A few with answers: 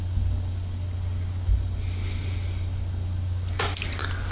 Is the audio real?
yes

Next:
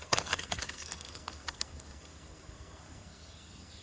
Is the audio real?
no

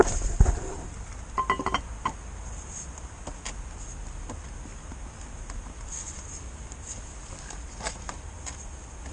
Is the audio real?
yes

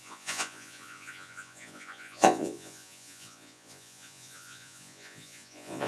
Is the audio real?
no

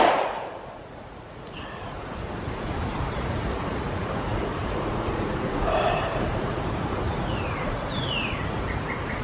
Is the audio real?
no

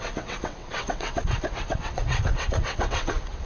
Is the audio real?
no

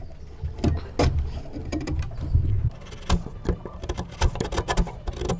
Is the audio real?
yes